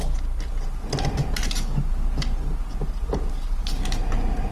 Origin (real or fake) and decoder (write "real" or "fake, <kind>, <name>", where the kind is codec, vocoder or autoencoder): real